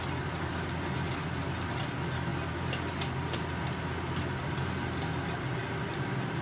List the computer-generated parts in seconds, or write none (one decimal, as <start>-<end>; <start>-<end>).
none